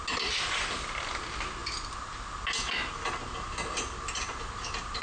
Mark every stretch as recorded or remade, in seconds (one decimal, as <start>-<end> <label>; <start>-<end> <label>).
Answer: 0.0-5.0 recorded